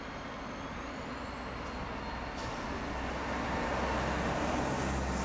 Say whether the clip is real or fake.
real